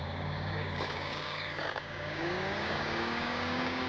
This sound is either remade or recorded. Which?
remade